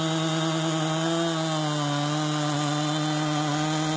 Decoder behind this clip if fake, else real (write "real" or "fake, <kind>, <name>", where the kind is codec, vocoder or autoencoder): real